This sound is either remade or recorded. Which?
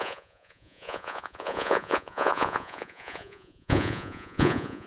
remade